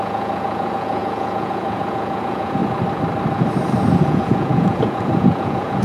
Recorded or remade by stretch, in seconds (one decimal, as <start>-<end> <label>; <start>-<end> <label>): 0.0-2.6 remade; 2.6-4.0 recorded; 4.0-5.8 remade